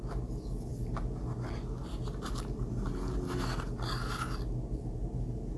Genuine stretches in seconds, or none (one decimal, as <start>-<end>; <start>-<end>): 0.0-5.6

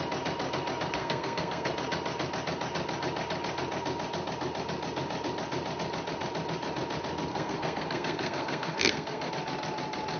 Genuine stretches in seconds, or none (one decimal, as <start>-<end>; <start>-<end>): 0.0-1.0; 1.7-7.3; 9.3-10.2

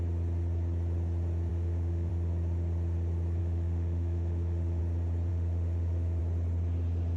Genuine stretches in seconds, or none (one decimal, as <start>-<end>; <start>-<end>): 0.0-1.5; 2.1-3.4; 4.8-5.3; 6.2-7.2

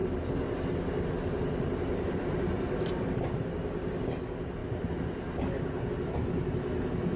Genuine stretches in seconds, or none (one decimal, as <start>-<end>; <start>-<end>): 0.0-7.2

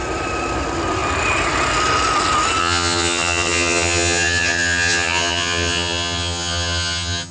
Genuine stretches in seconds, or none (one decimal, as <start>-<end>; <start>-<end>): 0.0-2.6

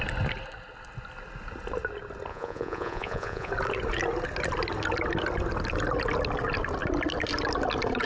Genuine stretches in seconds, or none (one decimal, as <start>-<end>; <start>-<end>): 0.0-2.3; 3.5-8.1

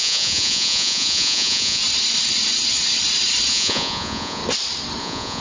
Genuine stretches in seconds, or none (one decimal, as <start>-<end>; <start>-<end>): 1.8-3.5; 4.4-5.0

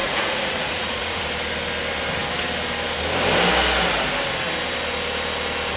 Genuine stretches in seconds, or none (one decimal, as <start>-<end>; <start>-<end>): 1.2-5.8